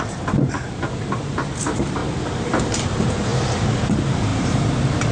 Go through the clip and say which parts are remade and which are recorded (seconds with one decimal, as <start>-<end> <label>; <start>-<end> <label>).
0.0-2.0 remade; 2.0-2.6 recorded; 2.6-3.3 remade; 3.3-3.8 recorded; 3.8-5.1 remade